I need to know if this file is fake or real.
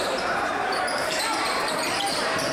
fake